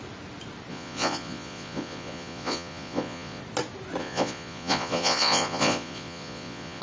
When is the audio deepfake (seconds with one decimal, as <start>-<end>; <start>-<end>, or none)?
0.7-3.4; 4.0-6.8